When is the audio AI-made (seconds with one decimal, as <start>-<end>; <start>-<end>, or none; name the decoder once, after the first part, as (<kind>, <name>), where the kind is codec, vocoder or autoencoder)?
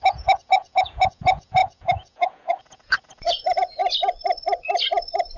0.0-3.8 (vocoder, Vocos)